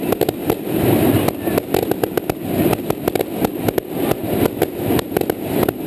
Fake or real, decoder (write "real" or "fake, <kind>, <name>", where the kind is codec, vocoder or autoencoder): real